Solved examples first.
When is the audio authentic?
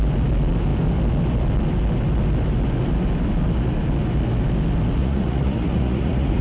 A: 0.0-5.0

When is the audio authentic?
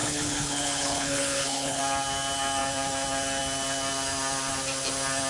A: 1.8-5.3